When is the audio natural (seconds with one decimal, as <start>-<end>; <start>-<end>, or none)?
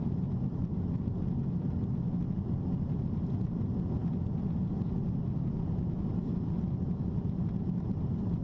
0.0-8.4